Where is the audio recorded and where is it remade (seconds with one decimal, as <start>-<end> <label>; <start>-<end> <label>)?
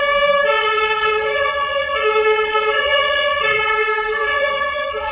0.0-0.6 recorded; 0.6-3.7 remade; 3.7-4.2 recorded; 4.2-5.1 remade